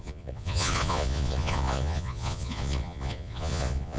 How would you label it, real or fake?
fake